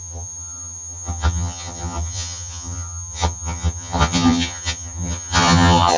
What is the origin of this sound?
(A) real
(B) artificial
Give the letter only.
B